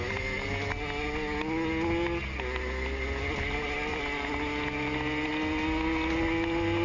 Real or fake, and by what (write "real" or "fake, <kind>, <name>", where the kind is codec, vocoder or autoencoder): real